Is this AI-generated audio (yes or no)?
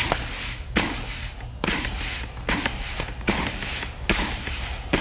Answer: no